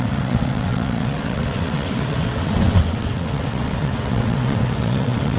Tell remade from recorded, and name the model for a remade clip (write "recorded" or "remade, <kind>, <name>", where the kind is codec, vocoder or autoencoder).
remade, vocoder, WaveNeXt